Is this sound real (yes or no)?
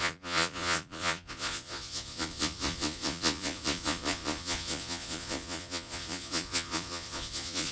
no